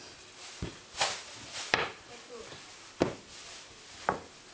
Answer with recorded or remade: recorded